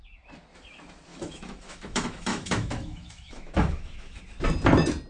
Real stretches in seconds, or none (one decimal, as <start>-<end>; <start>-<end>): 0.0-1.1; 4.2-5.1